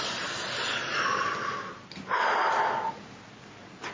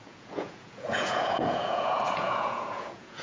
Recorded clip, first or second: first